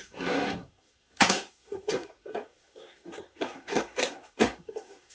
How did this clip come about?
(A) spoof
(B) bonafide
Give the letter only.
A